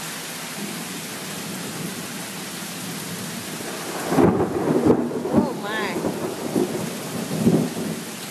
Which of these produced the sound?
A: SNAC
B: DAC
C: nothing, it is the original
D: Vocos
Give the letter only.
C